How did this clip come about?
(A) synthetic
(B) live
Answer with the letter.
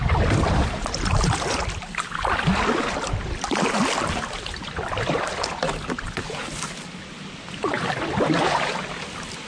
B